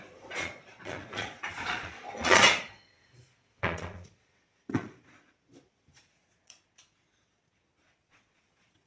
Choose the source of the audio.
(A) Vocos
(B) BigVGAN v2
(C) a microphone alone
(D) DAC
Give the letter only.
A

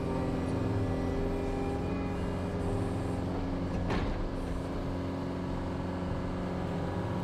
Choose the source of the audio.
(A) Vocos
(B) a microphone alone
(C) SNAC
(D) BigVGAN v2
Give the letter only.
B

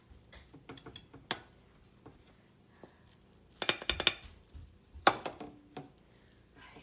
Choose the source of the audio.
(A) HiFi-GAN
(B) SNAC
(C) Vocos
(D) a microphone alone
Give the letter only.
D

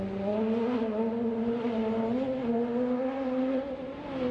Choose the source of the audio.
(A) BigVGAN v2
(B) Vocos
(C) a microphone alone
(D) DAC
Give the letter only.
C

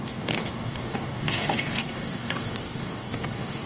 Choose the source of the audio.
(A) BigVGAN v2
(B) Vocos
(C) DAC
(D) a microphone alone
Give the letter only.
C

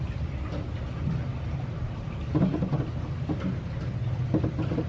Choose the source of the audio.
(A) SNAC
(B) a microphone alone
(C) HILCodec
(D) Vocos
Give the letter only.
B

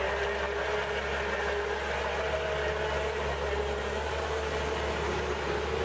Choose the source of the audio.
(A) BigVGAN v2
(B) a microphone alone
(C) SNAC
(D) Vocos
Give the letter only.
B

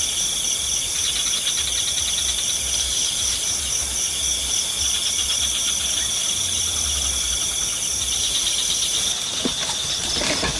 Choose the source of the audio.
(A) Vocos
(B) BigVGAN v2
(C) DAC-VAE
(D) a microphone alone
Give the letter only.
D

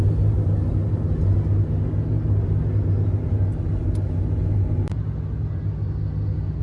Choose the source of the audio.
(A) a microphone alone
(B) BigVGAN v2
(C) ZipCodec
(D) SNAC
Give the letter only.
A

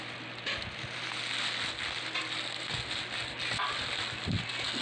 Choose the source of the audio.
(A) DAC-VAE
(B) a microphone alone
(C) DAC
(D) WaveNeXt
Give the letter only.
B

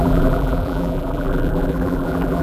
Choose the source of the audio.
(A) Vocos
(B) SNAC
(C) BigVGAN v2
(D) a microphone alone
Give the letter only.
C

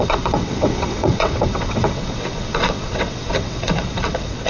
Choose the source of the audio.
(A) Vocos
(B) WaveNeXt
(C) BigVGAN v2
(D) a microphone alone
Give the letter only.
B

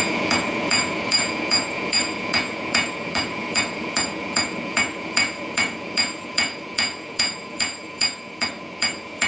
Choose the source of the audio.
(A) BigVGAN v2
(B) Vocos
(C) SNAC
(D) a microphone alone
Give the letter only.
B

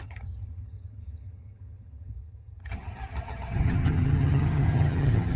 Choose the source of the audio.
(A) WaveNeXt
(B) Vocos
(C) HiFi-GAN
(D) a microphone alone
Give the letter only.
C